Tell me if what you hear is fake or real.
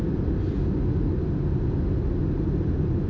real